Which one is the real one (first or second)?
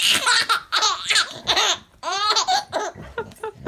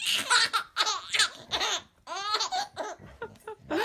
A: second